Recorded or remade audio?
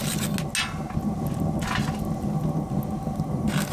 recorded